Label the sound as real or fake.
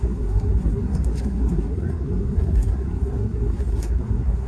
fake